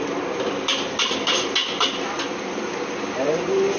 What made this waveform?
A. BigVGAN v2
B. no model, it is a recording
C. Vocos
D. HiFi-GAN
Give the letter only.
B